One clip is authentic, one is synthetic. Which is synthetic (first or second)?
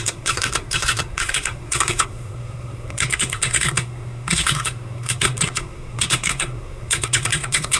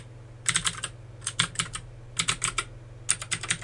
first